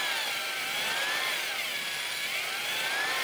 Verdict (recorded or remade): recorded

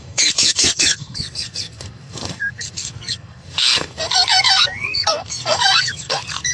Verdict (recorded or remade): remade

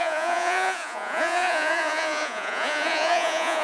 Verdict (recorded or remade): remade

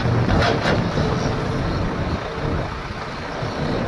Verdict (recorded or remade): recorded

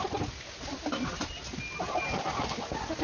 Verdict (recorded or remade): recorded